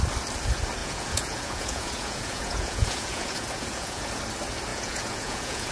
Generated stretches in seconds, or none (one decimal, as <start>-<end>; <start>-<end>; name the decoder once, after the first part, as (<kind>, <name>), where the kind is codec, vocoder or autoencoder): 0.8-4.2 (vocoder, Vocos); 4.7-5.7